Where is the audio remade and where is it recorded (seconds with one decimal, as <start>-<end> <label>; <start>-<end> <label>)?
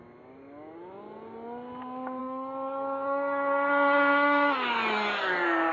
0.0-2.2 recorded; 2.2-5.7 remade